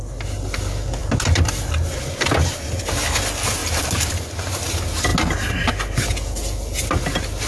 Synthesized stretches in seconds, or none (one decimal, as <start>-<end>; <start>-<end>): 3.6-4.1